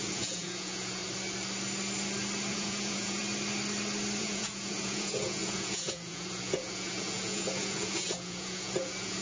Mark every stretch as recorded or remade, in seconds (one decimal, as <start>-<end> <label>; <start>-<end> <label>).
0.0-1.0 remade; 1.0-2.5 recorded; 2.5-3.2 remade; 3.2-4.2 recorded; 4.2-9.2 remade